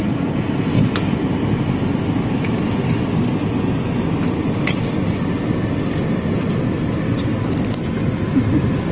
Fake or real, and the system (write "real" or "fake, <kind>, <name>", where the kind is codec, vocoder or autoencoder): real